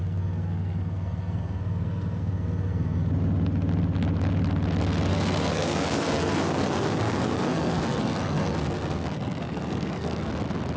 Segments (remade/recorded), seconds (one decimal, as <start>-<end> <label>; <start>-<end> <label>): 0.0-3.1 remade; 3.1-5.1 recorded; 5.1-10.3 remade; 10.3-10.8 recorded